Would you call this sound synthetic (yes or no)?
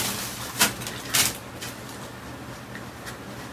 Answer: no